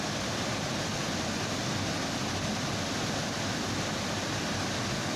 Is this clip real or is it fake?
real